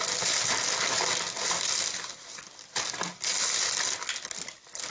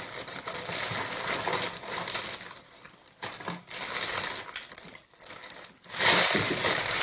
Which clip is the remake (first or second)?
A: second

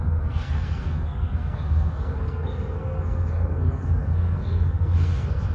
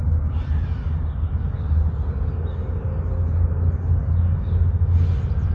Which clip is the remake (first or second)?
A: first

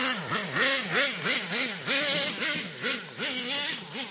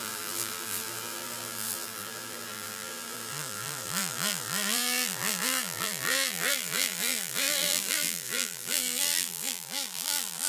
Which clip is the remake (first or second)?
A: second